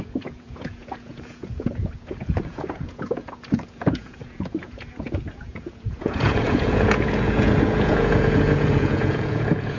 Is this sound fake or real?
fake